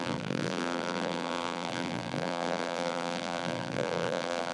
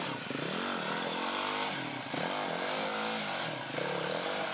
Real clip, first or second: second